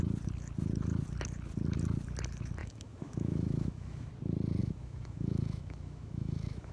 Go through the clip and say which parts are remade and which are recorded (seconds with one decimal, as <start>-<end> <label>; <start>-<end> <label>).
0.0-2.6 recorded; 2.6-4.1 remade; 4.1-4.6 recorded; 4.6-6.7 remade